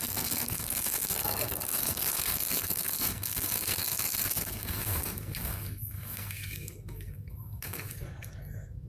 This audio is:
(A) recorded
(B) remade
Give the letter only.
B